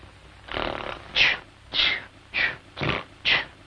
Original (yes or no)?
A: yes